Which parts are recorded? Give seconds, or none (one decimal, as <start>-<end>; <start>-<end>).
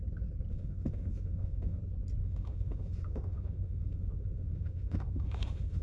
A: 0.0-0.5; 1.8-2.2